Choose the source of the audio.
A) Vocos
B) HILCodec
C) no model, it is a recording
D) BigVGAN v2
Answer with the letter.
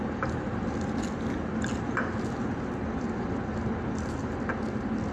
C